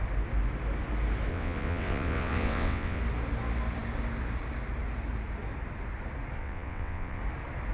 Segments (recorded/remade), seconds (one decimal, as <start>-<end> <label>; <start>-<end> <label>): 0.0-1.3 recorded; 1.3-3.0 remade; 3.0-6.4 recorded; 6.4-7.2 remade; 7.2-7.7 recorded